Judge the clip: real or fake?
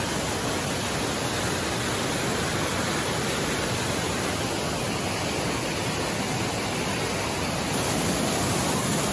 real